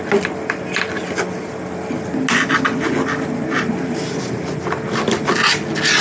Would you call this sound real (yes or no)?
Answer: yes